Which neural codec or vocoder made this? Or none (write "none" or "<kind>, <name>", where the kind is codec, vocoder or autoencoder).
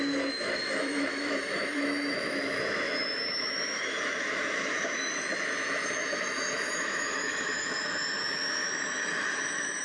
autoencoder, DAC-VAE